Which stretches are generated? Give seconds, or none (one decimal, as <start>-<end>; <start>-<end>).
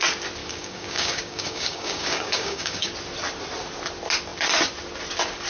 0.4-2.9